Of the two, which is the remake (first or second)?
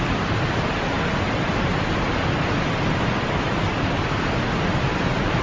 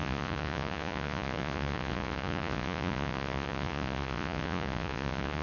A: second